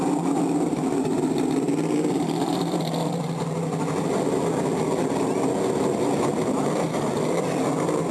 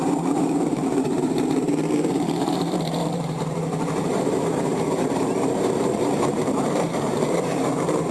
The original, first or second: first